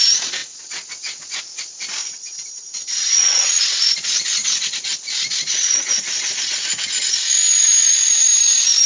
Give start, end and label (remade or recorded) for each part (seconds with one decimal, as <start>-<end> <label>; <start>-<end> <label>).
0.0-2.0 recorded; 2.0-3.6 remade; 3.6-8.9 recorded